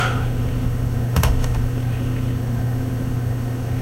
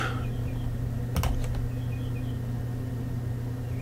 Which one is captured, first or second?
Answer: second